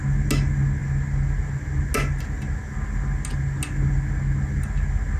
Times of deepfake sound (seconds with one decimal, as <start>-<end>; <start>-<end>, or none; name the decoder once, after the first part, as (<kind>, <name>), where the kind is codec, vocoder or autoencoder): none